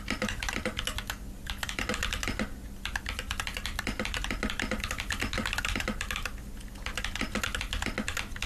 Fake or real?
real